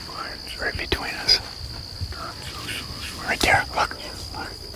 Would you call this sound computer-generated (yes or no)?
no